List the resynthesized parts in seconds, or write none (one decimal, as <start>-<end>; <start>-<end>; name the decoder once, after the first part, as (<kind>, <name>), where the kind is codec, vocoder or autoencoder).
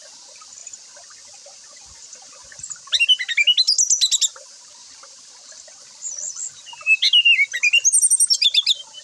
none